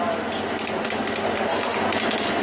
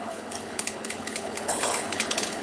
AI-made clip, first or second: second